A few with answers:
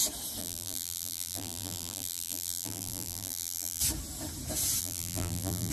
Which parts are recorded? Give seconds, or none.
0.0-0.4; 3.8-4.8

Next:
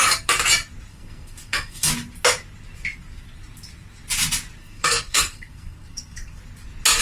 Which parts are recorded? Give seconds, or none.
0.0-0.9; 1.9-4.6; 6.4-7.0

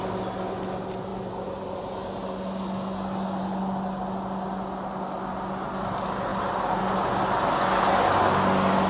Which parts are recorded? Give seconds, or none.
0.0-8.9